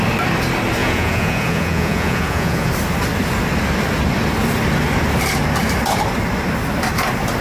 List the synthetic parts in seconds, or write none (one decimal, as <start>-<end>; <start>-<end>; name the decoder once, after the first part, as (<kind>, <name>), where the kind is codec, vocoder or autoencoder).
0.8-2.7 (vocoder, Vocos)